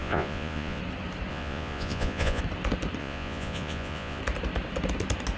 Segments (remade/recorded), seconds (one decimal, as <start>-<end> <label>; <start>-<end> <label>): 0.0-0.8 remade; 0.8-1.3 recorded; 1.3-2.4 remade; 2.4-3.0 recorded; 3.0-4.2 remade; 4.2-5.4 recorded